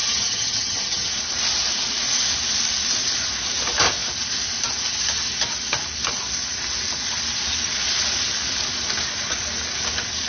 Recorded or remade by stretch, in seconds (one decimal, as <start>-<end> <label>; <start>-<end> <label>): 0.0-1.1 remade; 1.1-10.3 recorded